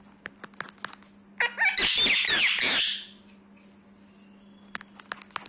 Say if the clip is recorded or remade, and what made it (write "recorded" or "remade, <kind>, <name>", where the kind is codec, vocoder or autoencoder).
recorded